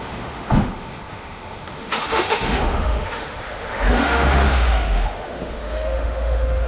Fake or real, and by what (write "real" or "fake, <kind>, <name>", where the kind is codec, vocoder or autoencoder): fake, autoencoder, DAC-VAE